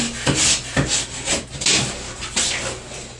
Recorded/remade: recorded